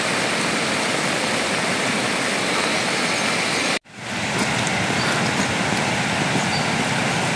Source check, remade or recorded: recorded